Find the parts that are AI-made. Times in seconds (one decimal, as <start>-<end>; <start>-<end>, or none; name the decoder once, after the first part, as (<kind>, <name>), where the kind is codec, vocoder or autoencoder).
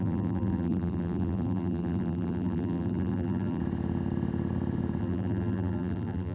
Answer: 0.0-3.6 (vocoder, BigVGAN v2); 5.0-6.3